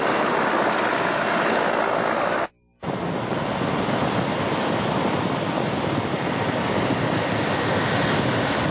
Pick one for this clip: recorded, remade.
recorded